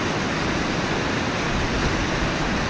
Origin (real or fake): real